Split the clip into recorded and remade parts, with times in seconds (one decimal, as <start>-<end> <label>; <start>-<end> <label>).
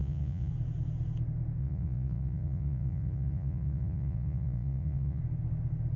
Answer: 0.0-0.5 remade; 0.5-1.6 recorded; 1.6-5.2 remade; 5.2-6.0 recorded